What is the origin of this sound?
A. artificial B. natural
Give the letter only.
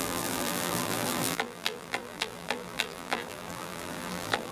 A